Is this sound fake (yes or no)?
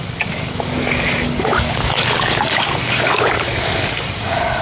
yes